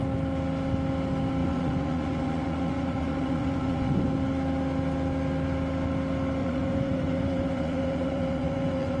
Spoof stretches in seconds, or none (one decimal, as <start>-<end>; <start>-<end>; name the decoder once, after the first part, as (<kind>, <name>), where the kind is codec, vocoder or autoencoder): 1.4-4.0 (vocoder, Vocos); 6.4-9.0